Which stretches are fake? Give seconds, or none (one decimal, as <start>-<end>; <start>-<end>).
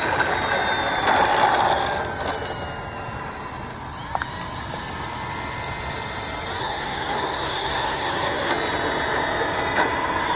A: 6.6-8.5